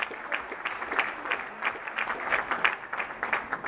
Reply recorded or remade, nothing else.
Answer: recorded